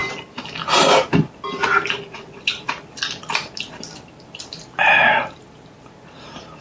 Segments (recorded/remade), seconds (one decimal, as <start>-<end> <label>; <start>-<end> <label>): 0.0-2.1 recorded; 2.1-2.5 remade; 2.5-6.6 recorded